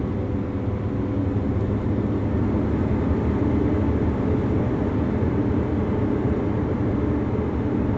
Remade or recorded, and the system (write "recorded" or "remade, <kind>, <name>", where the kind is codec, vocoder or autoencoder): recorded